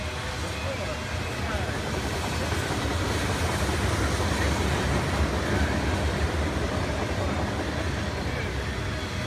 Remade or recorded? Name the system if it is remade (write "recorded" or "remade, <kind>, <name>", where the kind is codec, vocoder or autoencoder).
recorded